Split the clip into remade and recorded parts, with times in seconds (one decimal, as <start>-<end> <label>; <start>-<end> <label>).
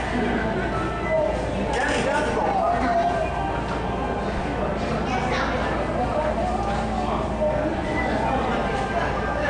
0.0-7.7 recorded; 7.7-8.4 remade; 8.4-9.5 recorded